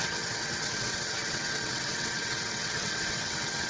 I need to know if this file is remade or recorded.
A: remade